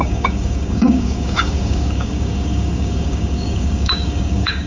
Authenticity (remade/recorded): remade